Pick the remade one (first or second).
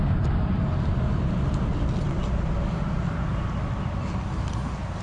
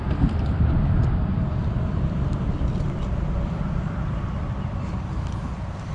second